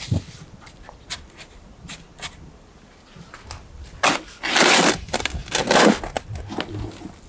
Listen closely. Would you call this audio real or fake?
real